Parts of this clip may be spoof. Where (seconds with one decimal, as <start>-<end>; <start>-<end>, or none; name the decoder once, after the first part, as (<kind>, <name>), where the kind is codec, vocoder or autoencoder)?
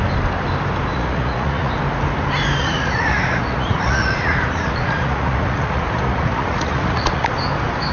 0.9-1.7 (vocoder, Vocos); 2.6-7.3